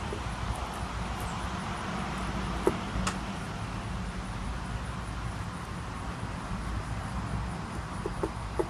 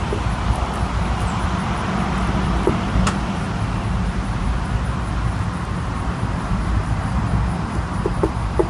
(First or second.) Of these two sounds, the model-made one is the second